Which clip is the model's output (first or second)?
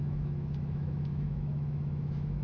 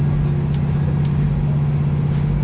first